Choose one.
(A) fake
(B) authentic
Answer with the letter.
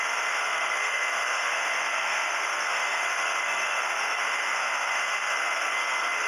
A